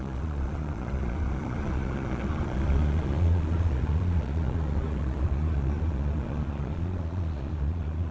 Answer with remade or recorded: remade